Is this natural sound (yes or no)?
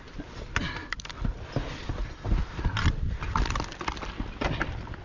yes